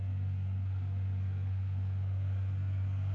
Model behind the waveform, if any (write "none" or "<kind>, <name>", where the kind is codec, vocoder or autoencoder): codec, SNAC